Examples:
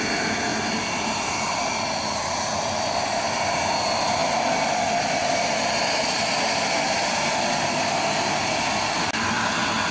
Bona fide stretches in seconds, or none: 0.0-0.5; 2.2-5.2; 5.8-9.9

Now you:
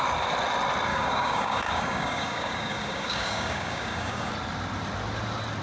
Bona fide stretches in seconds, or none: 0.0-0.9; 4.3-5.6

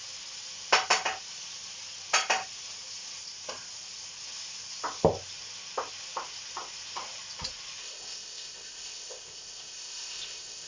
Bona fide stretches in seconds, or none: 0.0-7.8

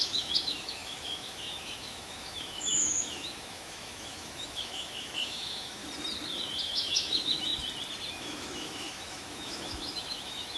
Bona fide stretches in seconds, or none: 5.8-6.6; 7.5-8.1

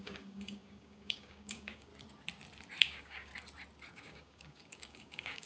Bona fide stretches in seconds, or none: 1.9-2.8; 3.3-3.9

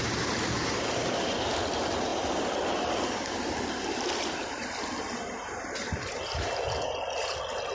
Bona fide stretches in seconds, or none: 0.0-7.7